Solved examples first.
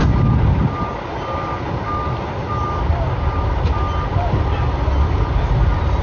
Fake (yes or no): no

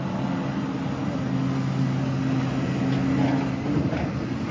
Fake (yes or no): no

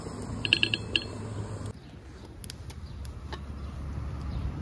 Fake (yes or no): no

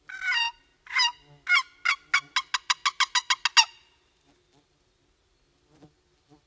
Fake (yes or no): no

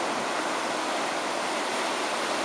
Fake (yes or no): no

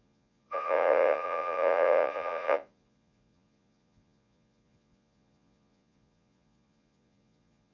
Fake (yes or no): yes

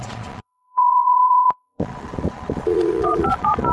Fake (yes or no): yes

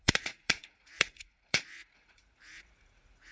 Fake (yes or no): yes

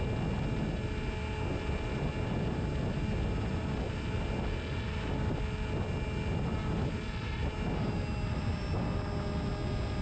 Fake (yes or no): no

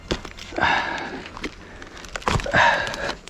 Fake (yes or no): no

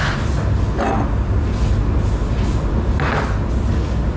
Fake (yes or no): no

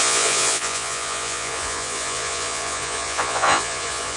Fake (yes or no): yes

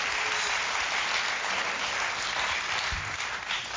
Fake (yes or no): no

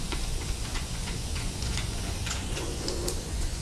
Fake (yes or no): yes